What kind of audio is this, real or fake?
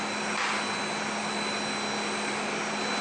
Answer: real